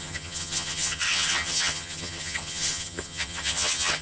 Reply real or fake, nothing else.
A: fake